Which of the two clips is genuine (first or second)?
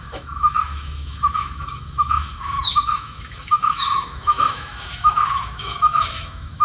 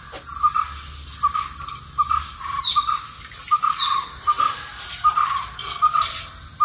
second